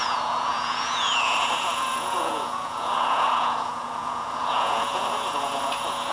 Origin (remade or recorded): remade